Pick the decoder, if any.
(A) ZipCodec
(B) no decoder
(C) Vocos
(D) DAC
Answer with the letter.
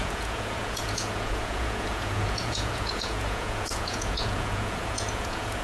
C